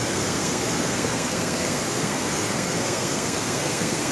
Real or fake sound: fake